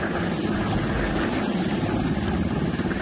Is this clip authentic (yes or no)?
yes